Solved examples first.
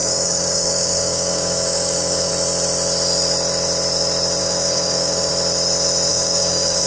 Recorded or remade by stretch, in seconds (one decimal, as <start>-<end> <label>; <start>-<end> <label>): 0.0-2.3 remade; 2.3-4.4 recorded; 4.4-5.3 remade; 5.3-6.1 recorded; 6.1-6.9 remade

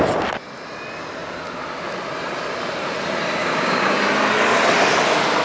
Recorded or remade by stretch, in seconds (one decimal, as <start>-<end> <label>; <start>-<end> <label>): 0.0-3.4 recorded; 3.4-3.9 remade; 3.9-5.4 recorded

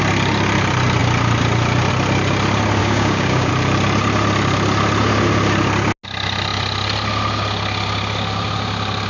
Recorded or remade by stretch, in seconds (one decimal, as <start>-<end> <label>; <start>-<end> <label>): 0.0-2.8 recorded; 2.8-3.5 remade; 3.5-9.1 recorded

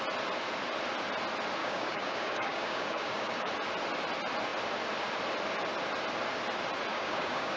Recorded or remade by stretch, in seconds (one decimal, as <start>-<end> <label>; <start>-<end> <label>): 0.0-1.6 recorded; 1.6-3.5 remade; 3.5-6.9 recorded; 6.9-7.6 remade

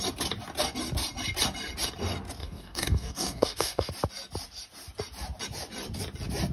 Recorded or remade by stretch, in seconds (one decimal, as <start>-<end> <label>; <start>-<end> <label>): 0.0-2.4 recorded; 2.4-3.9 remade; 3.9-6.5 recorded